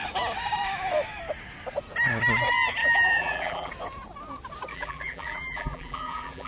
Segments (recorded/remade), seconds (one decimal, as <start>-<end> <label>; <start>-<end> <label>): 0.0-2.8 recorded; 2.8-3.7 remade; 3.7-4.7 recorded; 4.7-6.5 remade